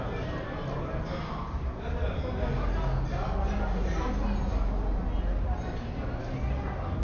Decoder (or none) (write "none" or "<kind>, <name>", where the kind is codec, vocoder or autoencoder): none